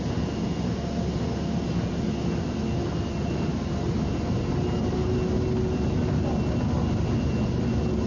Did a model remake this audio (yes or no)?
no